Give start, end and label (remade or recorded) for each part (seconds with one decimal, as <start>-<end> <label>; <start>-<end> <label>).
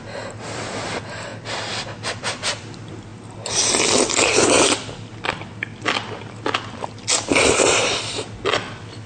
0.0-9.1 recorded